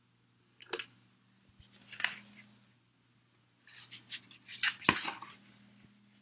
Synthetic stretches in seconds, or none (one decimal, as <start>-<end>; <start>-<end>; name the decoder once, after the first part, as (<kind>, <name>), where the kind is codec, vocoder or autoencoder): none